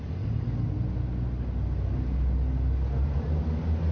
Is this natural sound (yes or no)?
yes